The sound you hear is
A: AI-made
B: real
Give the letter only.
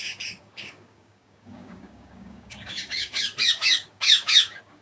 A